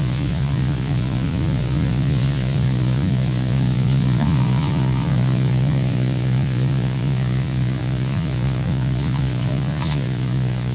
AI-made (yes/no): yes